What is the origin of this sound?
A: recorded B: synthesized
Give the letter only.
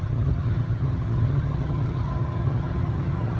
B